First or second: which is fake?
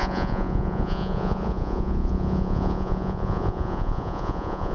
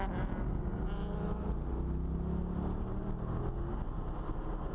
first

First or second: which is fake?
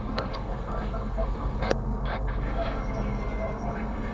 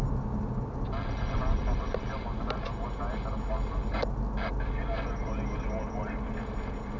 first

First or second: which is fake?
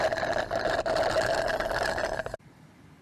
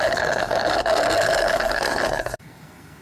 second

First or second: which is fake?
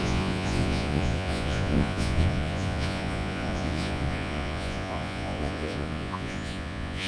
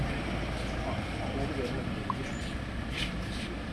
first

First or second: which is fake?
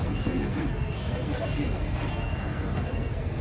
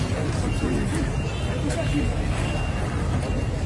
first